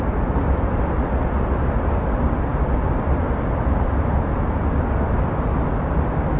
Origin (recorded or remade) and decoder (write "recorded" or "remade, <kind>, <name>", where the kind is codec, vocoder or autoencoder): recorded